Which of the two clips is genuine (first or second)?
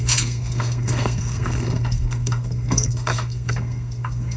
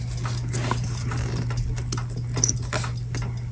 second